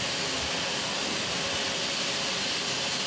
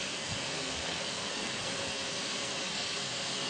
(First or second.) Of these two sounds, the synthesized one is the second